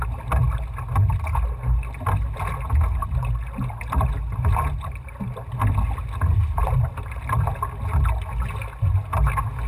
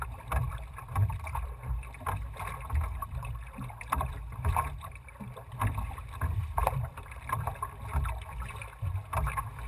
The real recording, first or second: first